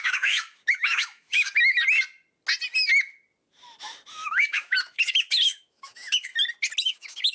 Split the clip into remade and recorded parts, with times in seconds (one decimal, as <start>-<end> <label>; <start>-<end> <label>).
0.0-1.8 remade; 1.8-4.1 recorded; 4.1-6.3 remade; 6.3-6.8 recorded; 6.8-7.3 remade